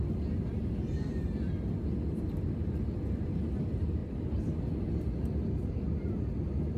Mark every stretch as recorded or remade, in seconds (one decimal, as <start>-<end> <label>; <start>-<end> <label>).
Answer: 0.0-4.0 recorded; 4.0-4.6 remade; 4.6-6.8 recorded

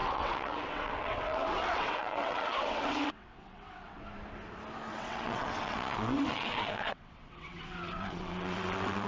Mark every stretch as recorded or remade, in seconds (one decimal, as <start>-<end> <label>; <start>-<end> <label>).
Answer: 0.0-4.0 remade; 4.0-4.9 recorded; 4.9-9.1 remade

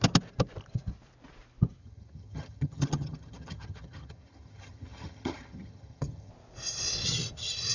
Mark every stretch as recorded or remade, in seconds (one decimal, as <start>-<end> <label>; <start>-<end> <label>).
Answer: 0.0-1.8 recorded; 1.8-6.3 remade; 6.3-7.7 recorded

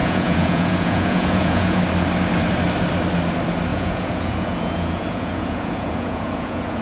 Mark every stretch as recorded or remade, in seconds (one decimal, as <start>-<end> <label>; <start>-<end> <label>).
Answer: 0.0-1.8 remade; 1.8-3.7 recorded; 3.7-6.8 remade

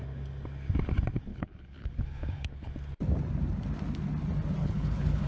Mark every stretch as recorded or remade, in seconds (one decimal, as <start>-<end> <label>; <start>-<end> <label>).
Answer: 0.0-1.3 recorded; 1.3-2.7 remade; 2.7-4.6 recorded; 4.6-5.3 remade

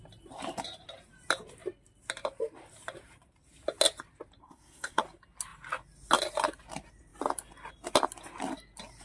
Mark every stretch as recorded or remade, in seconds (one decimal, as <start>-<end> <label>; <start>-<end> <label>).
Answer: 0.0-4.4 recorded; 4.4-5.0 remade; 5.0-9.0 recorded

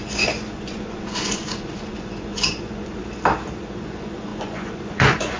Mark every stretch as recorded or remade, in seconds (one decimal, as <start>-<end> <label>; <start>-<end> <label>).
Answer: 0.0-3.0 remade; 3.0-3.6 recorded; 3.6-5.4 remade

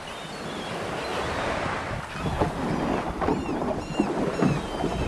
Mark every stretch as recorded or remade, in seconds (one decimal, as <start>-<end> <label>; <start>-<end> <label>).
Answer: 0.0-5.1 recorded